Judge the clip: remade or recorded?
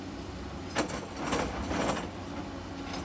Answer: recorded